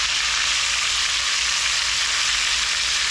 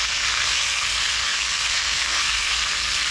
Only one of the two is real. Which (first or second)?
first